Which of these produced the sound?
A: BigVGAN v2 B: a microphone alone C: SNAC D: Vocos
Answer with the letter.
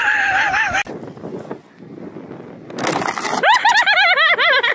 B